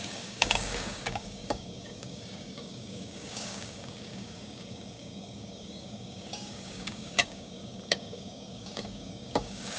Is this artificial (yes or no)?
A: yes